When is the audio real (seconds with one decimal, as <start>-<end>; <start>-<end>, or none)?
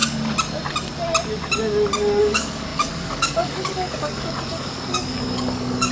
0.0-2.2